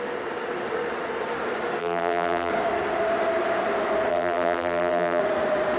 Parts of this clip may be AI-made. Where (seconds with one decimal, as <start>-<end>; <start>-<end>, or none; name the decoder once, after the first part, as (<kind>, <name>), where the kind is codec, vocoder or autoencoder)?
1.8-2.5 (vocoder, BigVGAN v2); 4.1-5.2